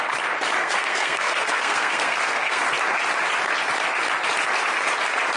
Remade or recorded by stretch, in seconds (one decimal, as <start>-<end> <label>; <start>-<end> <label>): 0.0-0.6 recorded; 0.6-2.6 remade; 2.6-5.4 recorded